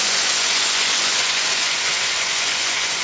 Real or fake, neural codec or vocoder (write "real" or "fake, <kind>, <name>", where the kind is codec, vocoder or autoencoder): fake, vocoder, Vocos